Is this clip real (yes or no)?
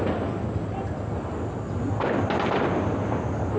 yes